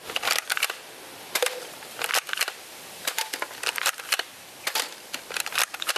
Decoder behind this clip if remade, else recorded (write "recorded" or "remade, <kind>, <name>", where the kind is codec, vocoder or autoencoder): remade, vocoder, BigVGAN v2